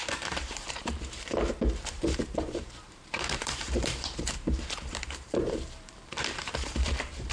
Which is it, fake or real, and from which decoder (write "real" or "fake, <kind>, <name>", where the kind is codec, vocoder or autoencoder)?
fake, vocoder, BigVGAN v2